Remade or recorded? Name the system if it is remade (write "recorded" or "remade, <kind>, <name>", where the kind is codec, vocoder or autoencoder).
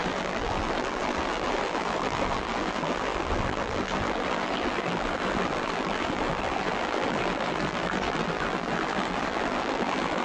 remade, vocoder, BigVGAN v2